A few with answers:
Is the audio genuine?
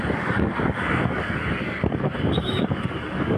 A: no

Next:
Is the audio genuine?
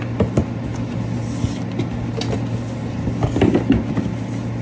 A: yes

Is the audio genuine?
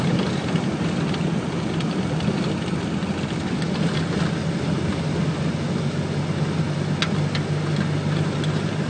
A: yes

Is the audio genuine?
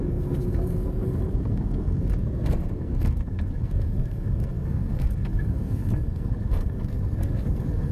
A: no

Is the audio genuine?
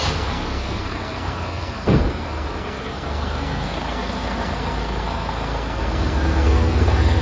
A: no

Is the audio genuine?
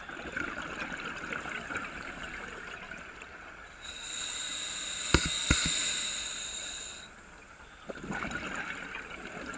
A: yes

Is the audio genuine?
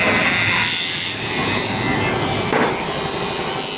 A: yes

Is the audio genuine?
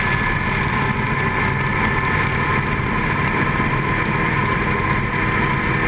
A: yes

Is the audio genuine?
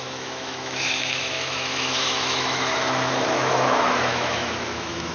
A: no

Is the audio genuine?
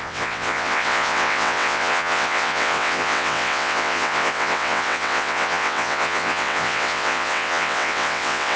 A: no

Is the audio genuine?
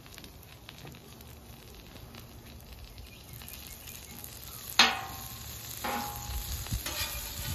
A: yes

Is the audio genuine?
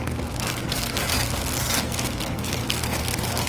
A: no